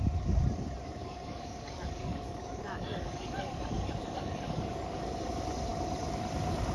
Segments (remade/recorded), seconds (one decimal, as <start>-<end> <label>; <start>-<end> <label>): 0.0-1.0 recorded; 1.0-5.0 remade; 5.0-6.7 recorded